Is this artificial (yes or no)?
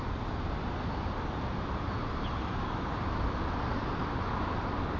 no